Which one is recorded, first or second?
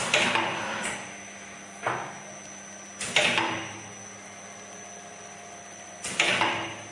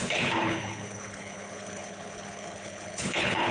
first